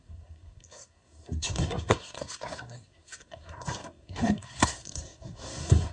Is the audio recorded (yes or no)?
no